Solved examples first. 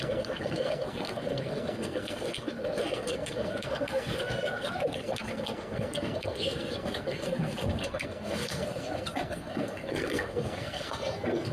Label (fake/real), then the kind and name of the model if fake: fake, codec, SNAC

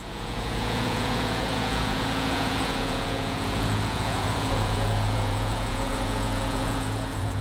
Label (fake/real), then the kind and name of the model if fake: fake, vocoder, Vocos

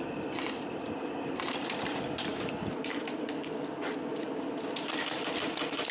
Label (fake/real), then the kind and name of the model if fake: real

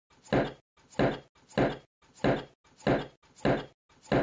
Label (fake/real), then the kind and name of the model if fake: real